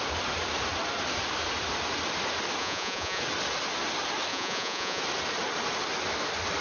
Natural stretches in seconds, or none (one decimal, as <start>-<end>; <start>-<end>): 0.0-2.6; 3.2-4.3; 5.0-6.6